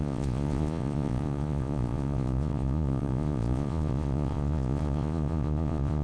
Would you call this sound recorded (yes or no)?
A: no